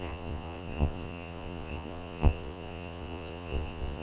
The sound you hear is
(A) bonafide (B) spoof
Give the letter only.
B